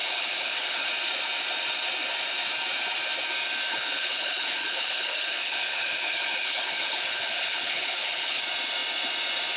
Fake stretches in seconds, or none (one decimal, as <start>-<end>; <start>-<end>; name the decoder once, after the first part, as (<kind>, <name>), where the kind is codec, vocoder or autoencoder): 0.0-0.9 (codec, HILCodec); 3.7-8.4